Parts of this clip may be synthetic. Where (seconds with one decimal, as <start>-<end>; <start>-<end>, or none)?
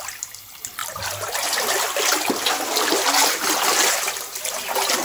none